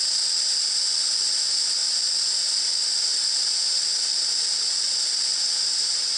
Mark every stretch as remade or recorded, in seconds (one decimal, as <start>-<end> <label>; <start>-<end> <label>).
0.0-6.2 recorded